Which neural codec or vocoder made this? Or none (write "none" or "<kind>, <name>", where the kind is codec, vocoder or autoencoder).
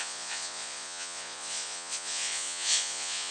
vocoder, Vocos